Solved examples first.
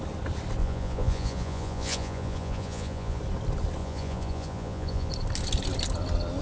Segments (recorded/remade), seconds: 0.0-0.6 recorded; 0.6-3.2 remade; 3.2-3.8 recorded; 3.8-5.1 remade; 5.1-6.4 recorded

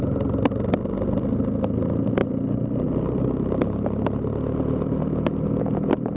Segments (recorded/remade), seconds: 0.0-6.2 recorded